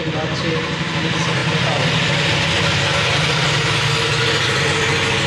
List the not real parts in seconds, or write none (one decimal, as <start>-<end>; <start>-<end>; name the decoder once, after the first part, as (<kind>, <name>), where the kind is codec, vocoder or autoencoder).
none